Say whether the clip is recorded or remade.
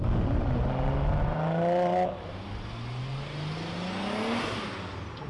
recorded